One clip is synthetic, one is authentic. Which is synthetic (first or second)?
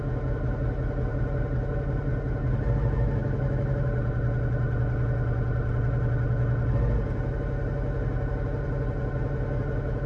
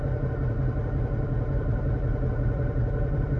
second